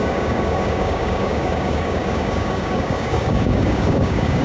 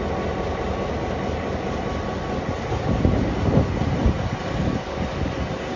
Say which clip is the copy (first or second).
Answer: first